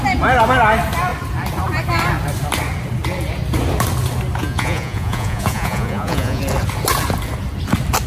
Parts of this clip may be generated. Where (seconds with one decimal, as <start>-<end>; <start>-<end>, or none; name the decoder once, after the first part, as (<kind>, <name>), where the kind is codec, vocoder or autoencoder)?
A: 4.4-6.4 (vocoder, Vocos)